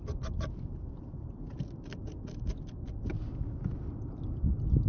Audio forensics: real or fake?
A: real